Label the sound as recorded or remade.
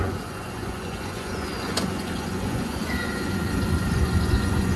remade